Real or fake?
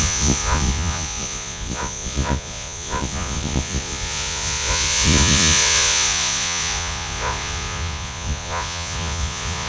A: fake